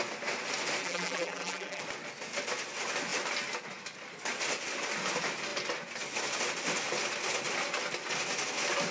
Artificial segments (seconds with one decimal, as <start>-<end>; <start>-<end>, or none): 0.8-1.8